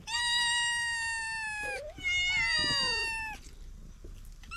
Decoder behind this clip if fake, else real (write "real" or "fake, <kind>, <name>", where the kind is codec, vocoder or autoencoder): real